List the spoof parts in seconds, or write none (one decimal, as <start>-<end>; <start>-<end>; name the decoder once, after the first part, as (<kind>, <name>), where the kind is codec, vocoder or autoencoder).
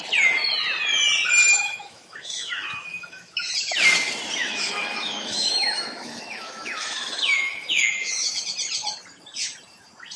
1.5-3.5 (autoencoder, DAC-VAE); 4.4-8.4